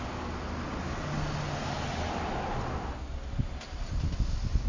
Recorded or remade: recorded